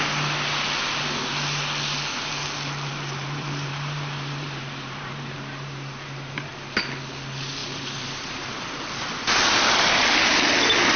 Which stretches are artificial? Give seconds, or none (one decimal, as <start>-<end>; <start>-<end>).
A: 2.9-6.5; 7.6-8.9